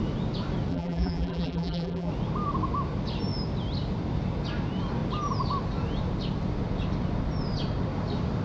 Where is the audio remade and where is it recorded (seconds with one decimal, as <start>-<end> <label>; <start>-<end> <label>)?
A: 0.0-0.7 recorded; 0.7-2.1 remade; 2.1-8.4 recorded

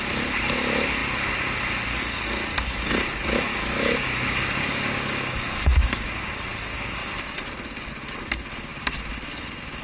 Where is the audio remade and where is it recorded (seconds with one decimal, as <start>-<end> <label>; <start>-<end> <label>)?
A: 0.0-3.5 recorded; 3.5-6.3 remade; 6.3-9.8 recorded

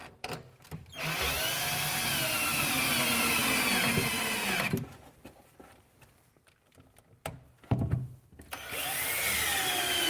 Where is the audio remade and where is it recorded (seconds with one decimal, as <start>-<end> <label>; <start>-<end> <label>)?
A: 0.0-2.5 recorded; 2.5-3.4 remade; 3.4-10.1 recorded

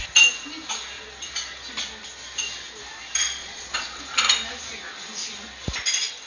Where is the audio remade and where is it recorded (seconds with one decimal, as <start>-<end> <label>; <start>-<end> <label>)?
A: 0.0-3.4 recorded; 3.4-4.0 remade; 4.0-6.3 recorded

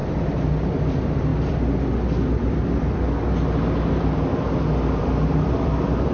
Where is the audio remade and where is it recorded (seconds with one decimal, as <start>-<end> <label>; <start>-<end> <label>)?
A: 0.0-0.5 recorded; 0.5-1.3 remade; 1.3-5.0 recorded; 5.0-6.1 remade

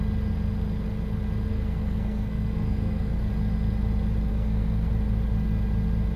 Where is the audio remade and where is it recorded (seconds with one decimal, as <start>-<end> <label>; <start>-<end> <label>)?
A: 0.0-1.5 recorded; 1.5-3.3 remade; 3.3-4.3 recorded; 4.3-4.9 remade; 4.9-6.2 recorded